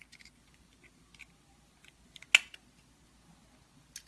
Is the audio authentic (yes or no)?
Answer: yes